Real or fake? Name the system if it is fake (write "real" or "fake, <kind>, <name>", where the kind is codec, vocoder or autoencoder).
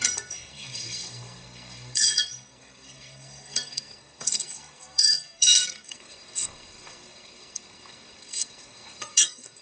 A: fake, codec, SNAC